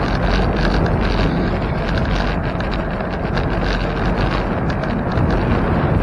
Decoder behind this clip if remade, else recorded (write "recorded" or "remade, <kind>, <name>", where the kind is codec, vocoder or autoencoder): recorded